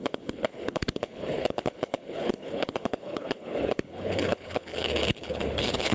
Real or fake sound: fake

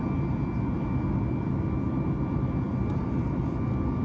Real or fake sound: real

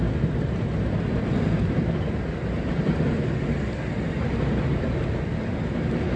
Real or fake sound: real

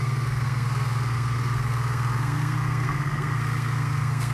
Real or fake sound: fake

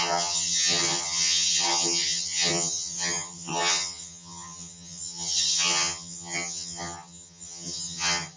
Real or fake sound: fake